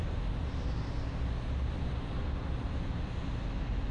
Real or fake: real